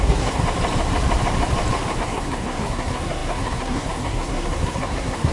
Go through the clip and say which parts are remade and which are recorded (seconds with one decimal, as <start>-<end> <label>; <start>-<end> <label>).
0.0-0.4 remade; 0.4-2.0 recorded; 2.0-5.3 remade